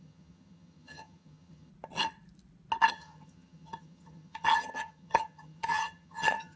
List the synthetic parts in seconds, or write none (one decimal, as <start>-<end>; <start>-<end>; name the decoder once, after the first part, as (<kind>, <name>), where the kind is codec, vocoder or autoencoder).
0.0-1.7 (vocoder, HiFi-GAN); 2.9-6.6